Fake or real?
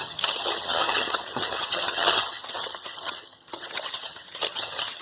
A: fake